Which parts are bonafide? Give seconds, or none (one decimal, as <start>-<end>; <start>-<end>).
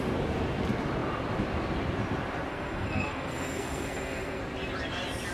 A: 0.0-2.5; 4.4-5.3